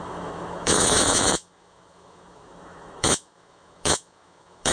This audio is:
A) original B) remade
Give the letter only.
B